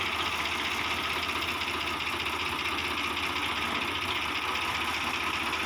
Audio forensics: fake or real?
real